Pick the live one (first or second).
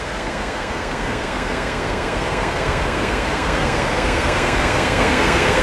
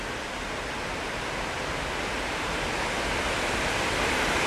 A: second